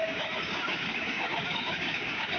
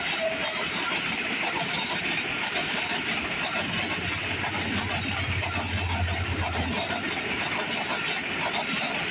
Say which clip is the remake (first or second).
first